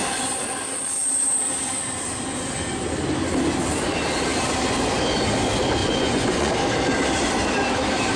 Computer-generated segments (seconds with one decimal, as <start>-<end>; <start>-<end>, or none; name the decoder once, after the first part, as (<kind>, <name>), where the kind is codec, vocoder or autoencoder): 5.8-6.5 (vocoder, Vocos)